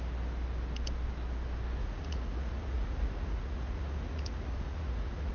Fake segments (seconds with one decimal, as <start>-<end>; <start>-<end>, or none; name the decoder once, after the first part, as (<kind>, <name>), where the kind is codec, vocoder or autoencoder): 1.8-5.3 (vocoder, Vocos)